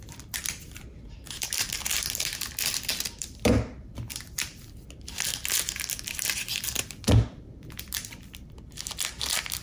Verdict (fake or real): fake